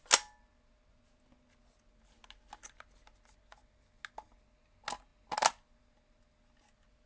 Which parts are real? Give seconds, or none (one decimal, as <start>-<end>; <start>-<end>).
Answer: 0.0-7.1